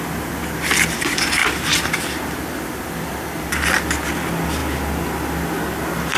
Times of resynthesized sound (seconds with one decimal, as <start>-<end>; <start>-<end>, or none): 1.4-3.5